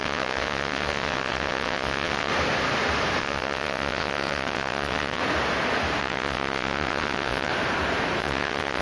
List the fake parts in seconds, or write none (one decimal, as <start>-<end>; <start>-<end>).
0.0-2.3; 3.2-5.2; 6.0-7.5; 8.2-8.8